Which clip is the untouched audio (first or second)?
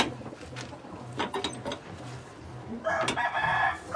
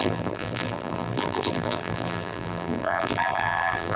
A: first